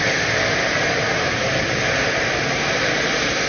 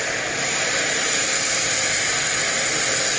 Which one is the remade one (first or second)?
first